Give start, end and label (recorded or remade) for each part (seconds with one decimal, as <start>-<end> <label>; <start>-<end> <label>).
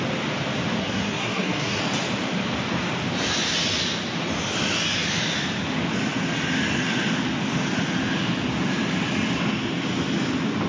0.0-0.8 recorded; 0.8-1.8 remade; 1.8-10.7 recorded